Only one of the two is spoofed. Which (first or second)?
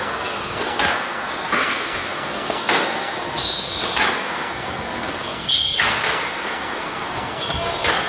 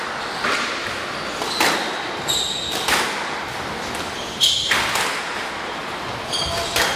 first